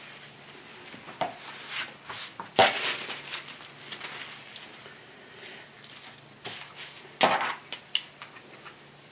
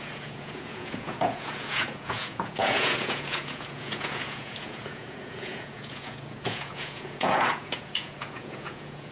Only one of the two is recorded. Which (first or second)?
first